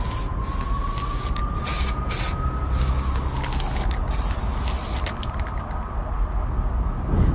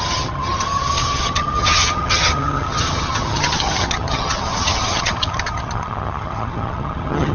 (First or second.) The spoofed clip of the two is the second